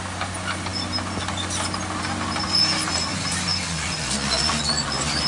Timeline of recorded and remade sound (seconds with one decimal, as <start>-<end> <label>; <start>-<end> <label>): 0.0-3.1 recorded; 3.1-5.3 remade

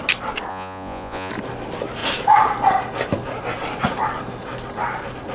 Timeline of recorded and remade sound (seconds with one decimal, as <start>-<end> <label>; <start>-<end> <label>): 0.0-0.5 recorded; 0.5-1.3 remade; 1.3-5.3 recorded

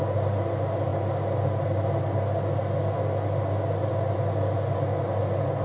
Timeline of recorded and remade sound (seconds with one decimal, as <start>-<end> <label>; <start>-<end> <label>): 0.0-5.6 recorded

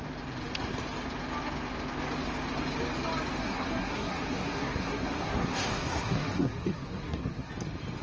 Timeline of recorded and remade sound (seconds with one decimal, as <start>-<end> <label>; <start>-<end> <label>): 0.0-3.4 recorded; 3.4-7.5 remade; 7.5-8.0 recorded

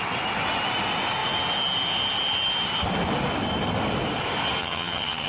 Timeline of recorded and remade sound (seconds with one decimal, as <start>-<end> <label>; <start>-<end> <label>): 0.0-4.6 recorded; 4.6-5.3 remade

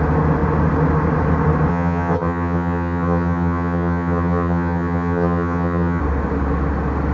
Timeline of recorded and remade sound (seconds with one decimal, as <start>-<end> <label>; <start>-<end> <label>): 0.0-1.7 recorded; 1.7-6.0 remade; 6.0-7.1 recorded

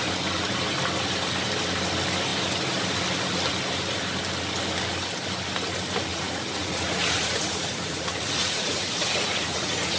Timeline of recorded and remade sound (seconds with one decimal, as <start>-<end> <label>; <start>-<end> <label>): 0.0-6.1 recorded; 6.1-10.0 remade

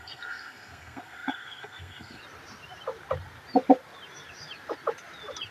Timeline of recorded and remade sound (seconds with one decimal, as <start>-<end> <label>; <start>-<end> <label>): 0.0-2.2 remade; 2.2-5.5 recorded